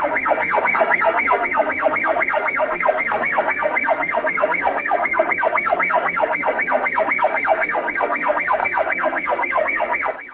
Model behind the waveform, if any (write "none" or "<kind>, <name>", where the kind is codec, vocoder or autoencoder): codec, SNAC